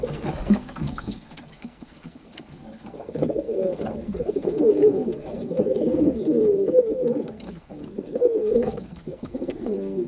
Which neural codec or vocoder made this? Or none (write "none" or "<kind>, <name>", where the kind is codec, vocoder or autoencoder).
codec, SNAC